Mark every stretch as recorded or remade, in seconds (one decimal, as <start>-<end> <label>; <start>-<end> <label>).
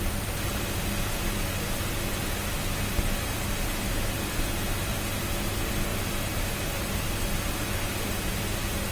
0.0-8.9 recorded